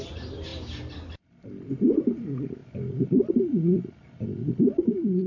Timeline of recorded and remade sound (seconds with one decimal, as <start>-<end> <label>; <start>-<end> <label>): 0.0-5.3 recorded

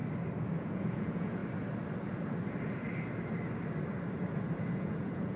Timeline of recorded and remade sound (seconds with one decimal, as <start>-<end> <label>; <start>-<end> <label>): 0.0-0.6 recorded; 0.6-1.4 remade; 1.4-4.6 recorded; 4.6-5.4 remade